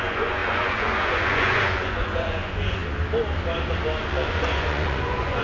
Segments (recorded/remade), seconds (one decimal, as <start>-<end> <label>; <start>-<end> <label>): 0.0-2.8 remade; 2.8-4.0 recorded; 4.0-5.4 remade